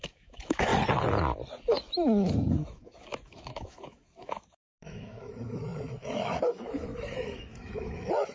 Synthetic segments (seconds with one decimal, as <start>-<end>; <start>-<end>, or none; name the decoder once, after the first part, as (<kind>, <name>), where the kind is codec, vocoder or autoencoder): 0.0-0.7 (autoencoder, DAC-VAE); 1.8-8.3